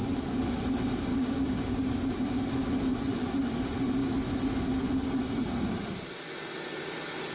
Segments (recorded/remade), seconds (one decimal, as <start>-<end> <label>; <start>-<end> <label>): 0.0-1.1 recorded; 1.1-2.2 remade; 2.2-7.3 recorded